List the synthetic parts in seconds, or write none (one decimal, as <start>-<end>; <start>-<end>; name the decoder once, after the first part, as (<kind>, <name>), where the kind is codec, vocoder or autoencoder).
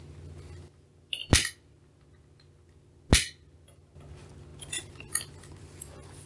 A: none